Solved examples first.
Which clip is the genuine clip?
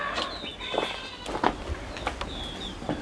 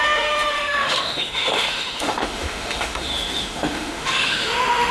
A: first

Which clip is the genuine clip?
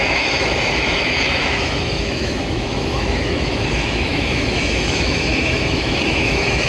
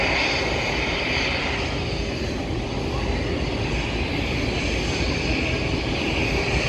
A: second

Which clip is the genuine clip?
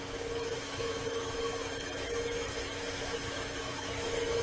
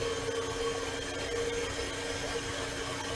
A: second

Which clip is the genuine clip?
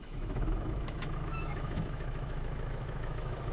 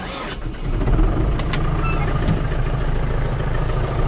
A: second